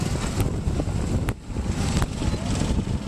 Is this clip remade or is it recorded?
recorded